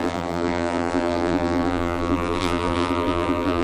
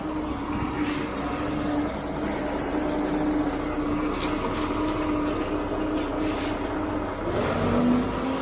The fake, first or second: first